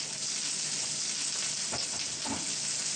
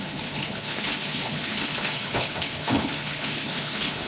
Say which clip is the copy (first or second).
second